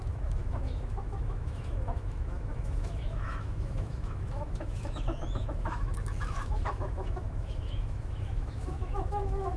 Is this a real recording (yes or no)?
no